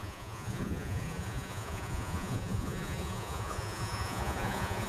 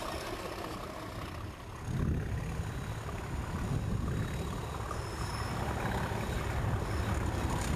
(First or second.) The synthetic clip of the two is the first